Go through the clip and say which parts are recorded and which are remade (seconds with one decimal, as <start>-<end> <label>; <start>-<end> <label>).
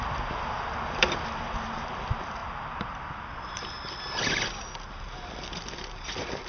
0.0-6.5 recorded